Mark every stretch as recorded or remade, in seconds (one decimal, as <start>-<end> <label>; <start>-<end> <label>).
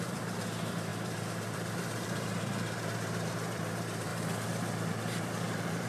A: 0.0-4.1 remade; 4.1-4.9 recorded; 4.9-5.9 remade